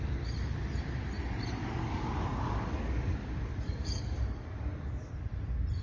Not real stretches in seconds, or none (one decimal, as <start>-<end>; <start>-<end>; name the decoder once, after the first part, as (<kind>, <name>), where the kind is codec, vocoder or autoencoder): 1.6-5.1 (codec, DAC)